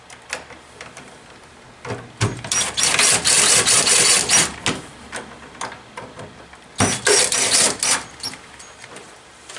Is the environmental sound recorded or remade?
recorded